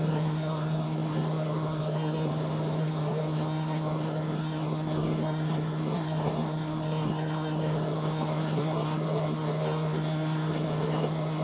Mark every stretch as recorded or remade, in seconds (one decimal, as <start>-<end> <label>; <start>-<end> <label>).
0.0-2.3 remade; 2.3-2.8 recorded; 2.8-11.4 remade

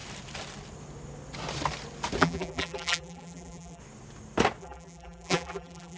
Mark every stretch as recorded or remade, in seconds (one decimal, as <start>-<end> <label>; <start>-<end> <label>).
0.0-2.2 recorded; 2.2-3.8 remade; 3.8-4.6 recorded; 4.6-6.0 remade

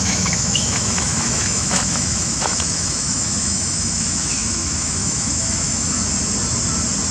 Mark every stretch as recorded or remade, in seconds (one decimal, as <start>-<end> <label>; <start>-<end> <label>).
0.0-6.0 remade; 6.0-7.1 recorded

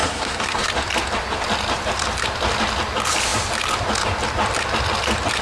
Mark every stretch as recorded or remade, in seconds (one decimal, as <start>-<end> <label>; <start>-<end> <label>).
0.0-0.7 remade; 0.7-5.4 recorded

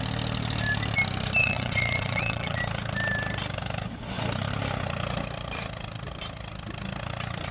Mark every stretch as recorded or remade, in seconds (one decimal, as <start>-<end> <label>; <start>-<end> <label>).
0.0-1.4 recorded; 1.4-2.6 remade; 2.6-7.5 recorded

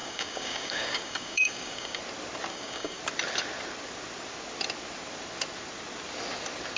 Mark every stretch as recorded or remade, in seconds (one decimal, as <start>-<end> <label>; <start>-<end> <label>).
0.0-2.0 remade; 2.0-2.5 recorded; 2.5-3.0 remade; 3.0-6.8 recorded

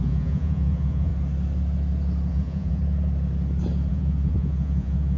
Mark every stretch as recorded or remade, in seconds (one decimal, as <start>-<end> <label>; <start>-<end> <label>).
0.0-1.1 remade; 1.1-2.3 recorded; 2.3-2.8 remade; 2.8-3.9 recorded; 3.9-5.2 remade

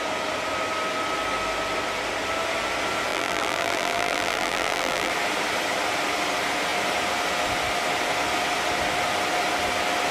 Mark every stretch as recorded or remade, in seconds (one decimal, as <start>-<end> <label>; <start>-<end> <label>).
0.0-3.1 recorded; 3.1-5.1 remade; 5.1-10.1 recorded